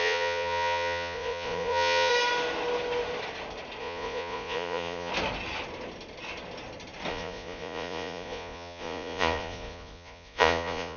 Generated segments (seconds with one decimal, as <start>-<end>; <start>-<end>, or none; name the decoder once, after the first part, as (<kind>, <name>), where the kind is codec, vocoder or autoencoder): 0.0-2.1 (vocoder, Vocos); 3.8-5.1; 7.1-11.0